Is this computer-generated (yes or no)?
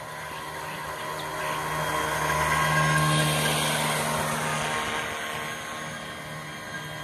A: no